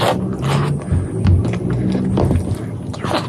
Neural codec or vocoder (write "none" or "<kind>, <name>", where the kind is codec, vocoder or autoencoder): none